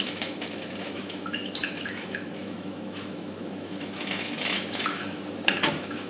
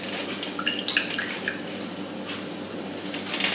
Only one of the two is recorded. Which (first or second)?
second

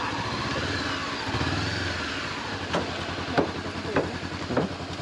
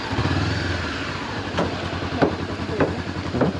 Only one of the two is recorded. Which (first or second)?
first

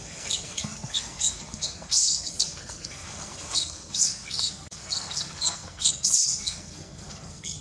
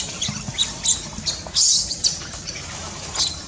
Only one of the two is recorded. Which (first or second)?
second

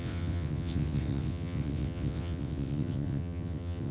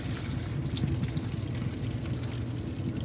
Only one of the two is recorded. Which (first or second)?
second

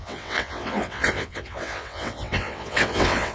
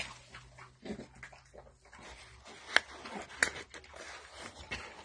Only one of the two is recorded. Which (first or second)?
second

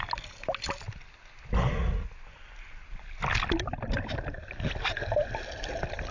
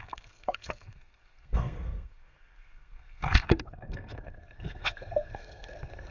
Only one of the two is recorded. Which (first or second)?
first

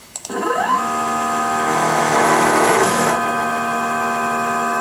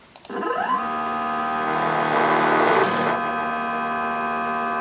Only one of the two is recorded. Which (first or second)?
second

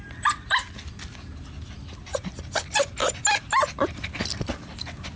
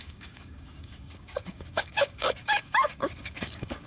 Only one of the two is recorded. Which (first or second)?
first